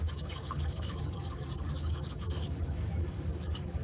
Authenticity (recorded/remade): remade